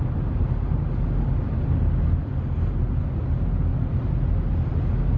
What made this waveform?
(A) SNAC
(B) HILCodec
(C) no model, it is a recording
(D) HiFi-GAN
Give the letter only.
C